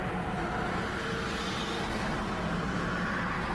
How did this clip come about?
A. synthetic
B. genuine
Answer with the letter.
B